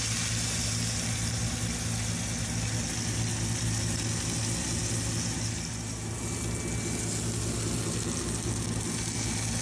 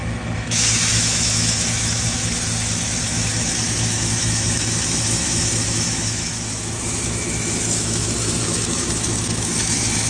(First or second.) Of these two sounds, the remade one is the second